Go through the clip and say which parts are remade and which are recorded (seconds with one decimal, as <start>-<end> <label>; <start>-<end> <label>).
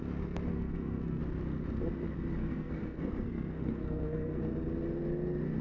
0.0-0.5 recorded; 0.5-1.2 remade; 1.2-2.4 recorded; 2.4-4.4 remade; 4.4-5.6 recorded